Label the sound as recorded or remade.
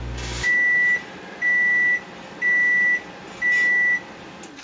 recorded